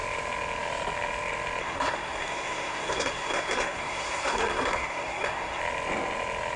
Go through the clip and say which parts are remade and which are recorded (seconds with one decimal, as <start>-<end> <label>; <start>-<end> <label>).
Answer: 0.0-1.6 recorded; 1.6-5.6 remade; 5.6-6.6 recorded